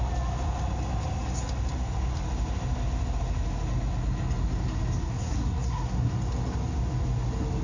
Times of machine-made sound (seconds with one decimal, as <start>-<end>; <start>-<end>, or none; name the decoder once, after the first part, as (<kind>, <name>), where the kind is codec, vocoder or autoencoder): 5.0-6.1 (codec, SNAC)

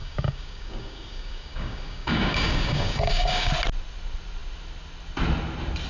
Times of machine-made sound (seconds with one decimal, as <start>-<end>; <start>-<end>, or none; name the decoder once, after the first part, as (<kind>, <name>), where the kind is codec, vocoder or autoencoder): 0.0-3.5 (codec, DAC)

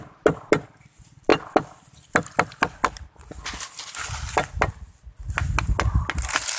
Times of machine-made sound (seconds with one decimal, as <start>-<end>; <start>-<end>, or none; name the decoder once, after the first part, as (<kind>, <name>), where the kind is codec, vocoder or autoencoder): none

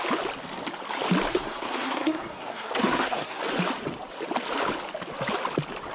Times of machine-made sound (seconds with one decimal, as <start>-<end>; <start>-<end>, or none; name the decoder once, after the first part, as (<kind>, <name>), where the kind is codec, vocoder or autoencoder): 1.3-3.4 (codec, SNAC)

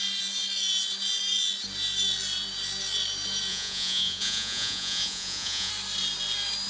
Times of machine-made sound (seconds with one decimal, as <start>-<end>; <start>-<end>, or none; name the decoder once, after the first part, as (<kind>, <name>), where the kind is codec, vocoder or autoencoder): 3.5-5.7 (vocoder, Vocos)

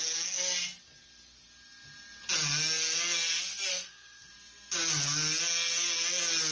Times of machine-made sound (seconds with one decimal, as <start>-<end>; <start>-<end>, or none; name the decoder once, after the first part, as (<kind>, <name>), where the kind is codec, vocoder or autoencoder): 3.7-4.3 (codec, SNAC)

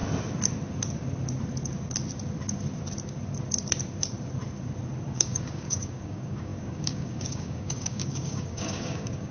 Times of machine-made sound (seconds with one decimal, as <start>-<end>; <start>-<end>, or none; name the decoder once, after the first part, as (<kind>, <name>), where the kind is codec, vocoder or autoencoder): 5.1-9.3 (codec, DAC)